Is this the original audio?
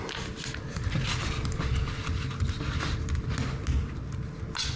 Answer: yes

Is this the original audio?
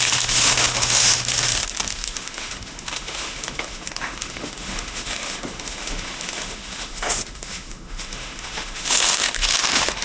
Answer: no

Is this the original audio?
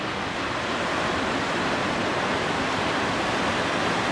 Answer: yes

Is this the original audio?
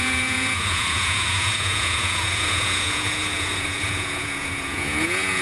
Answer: no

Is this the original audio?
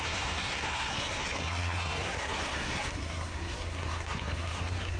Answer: no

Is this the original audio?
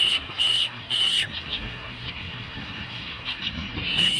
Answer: no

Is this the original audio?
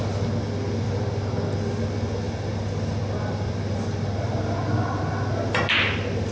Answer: yes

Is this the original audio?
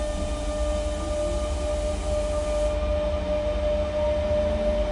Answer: yes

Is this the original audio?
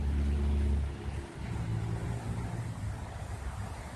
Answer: yes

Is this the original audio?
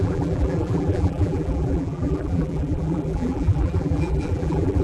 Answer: no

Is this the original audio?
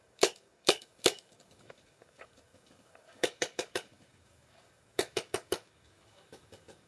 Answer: no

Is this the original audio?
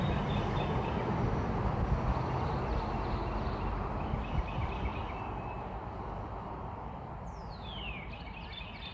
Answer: yes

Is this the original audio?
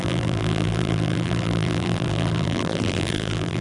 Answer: no